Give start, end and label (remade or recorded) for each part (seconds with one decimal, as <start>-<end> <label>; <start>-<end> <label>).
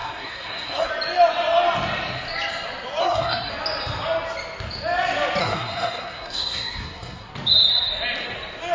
0.0-0.9 remade; 0.9-3.0 recorded; 3.0-3.5 remade; 3.5-5.4 recorded; 5.4-7.3 remade; 7.3-8.7 recorded